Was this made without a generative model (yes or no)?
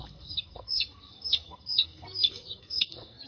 no